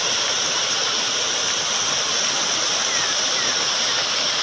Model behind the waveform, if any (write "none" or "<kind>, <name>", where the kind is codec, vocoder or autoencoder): none